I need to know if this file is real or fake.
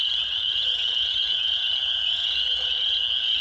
fake